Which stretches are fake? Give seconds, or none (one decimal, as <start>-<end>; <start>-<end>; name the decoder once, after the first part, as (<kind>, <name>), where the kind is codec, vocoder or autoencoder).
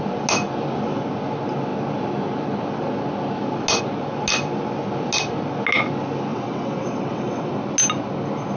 6.3-7.5 (vocoder, WaveNeXt)